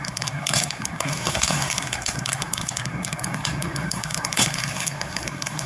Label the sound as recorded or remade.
remade